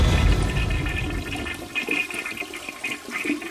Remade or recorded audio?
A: remade